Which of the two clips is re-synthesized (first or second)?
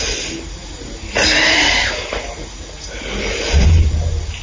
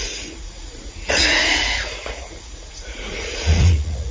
second